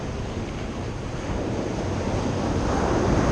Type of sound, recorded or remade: recorded